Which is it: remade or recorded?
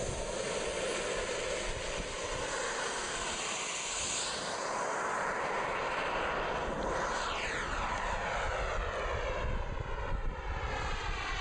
recorded